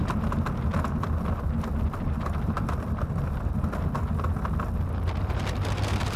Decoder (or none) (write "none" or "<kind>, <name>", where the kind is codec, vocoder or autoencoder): none